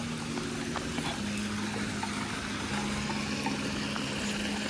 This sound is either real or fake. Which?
real